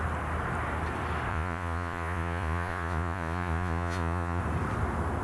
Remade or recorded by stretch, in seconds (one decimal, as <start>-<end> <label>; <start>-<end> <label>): 0.0-1.3 recorded; 1.3-4.4 remade; 4.4-5.2 recorded